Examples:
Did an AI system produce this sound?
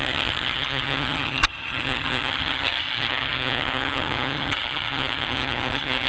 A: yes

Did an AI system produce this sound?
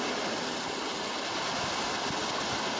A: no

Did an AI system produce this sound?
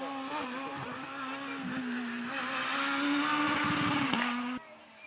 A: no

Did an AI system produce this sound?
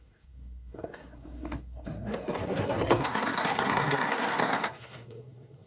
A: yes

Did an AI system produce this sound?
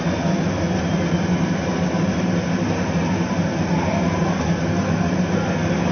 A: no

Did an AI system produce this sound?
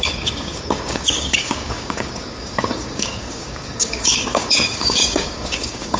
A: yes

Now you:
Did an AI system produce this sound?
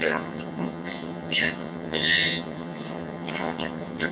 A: yes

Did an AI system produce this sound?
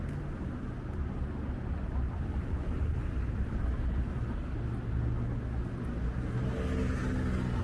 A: no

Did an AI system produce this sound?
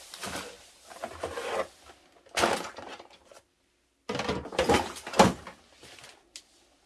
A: no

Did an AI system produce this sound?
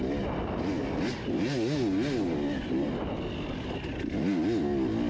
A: no